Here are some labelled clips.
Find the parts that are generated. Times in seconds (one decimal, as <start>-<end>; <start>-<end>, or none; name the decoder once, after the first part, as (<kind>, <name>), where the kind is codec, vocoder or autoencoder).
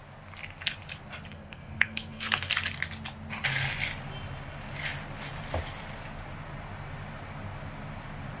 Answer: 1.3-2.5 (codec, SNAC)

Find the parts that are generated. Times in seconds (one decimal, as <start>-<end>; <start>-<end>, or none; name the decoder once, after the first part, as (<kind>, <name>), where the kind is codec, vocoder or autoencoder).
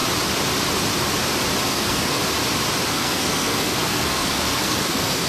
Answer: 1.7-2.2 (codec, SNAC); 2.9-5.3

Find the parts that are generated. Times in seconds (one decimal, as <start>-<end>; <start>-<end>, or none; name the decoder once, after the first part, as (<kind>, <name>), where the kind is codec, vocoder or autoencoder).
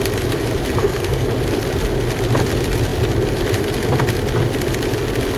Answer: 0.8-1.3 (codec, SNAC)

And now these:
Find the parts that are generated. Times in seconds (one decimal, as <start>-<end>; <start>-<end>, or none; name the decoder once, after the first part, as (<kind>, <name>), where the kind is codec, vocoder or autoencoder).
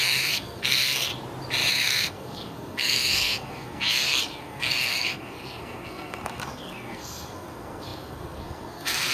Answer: 0.0-1.1 (codec, SNAC); 1.7-9.1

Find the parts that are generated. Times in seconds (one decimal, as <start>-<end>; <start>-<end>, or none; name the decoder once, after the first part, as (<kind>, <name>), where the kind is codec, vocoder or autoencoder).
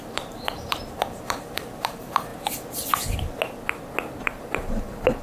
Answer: 0.0-2.3 (vocoder, BigVGAN v2); 4.2-5.2